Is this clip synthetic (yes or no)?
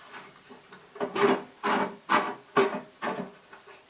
no